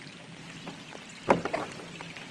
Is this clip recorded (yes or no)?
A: yes